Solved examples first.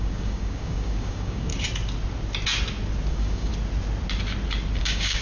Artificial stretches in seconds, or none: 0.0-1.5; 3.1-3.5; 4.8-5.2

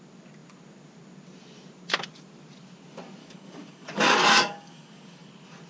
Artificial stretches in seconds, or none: 3.2-5.3